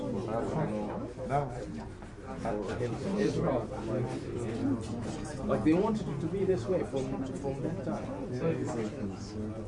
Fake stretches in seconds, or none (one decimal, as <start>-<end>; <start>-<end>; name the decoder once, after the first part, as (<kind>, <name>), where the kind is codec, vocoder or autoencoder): 2.7-3.5 (vocoder, BigVGAN v2); 4.6-6.8